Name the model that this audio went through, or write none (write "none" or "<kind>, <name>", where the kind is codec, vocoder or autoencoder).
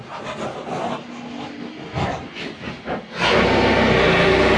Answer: none